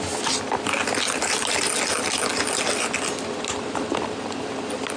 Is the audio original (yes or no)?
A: yes